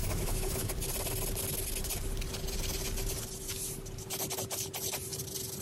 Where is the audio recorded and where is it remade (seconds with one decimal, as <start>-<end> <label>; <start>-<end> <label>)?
0.0-0.7 remade; 0.7-5.6 recorded